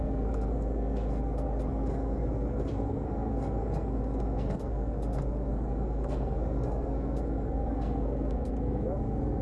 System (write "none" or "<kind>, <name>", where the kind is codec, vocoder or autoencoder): codec, SNAC